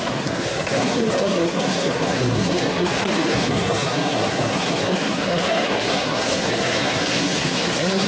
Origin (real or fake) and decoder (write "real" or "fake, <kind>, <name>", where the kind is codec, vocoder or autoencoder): fake, codec, SNAC